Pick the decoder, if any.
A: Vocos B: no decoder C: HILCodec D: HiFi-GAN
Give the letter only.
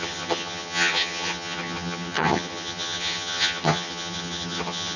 D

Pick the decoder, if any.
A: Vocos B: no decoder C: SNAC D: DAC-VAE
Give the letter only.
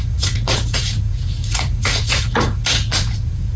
A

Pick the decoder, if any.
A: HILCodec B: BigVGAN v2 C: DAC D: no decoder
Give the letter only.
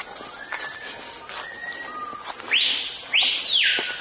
D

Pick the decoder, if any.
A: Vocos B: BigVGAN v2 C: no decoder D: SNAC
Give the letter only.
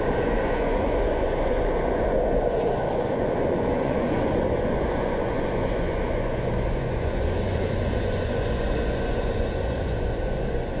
A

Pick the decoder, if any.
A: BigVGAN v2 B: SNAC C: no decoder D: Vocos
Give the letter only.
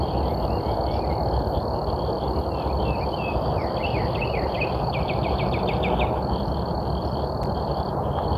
C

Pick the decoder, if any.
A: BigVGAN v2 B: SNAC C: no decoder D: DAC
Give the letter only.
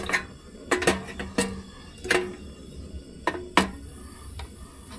C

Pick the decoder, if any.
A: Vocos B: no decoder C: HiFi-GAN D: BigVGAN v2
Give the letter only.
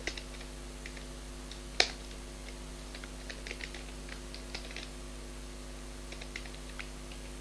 B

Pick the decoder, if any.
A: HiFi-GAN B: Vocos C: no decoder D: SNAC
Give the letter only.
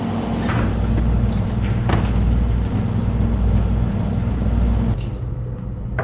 C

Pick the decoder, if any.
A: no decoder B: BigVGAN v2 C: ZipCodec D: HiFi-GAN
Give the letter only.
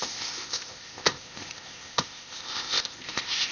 C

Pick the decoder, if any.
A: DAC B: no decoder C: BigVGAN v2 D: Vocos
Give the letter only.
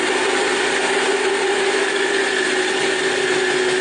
B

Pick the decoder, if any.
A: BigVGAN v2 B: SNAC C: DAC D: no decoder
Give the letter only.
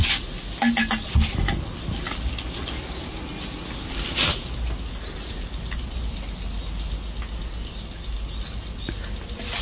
D